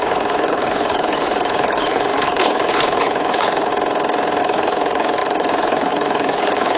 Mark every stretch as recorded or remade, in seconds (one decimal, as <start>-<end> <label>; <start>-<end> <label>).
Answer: 0.0-3.7 remade; 3.7-4.4 recorded; 4.4-6.8 remade